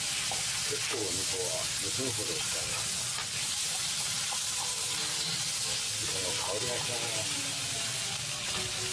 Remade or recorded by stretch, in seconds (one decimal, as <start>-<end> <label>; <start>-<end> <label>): 0.0-8.9 recorded